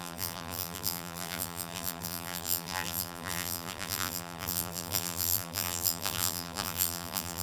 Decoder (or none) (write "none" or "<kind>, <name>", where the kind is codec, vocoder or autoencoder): vocoder, BigVGAN v2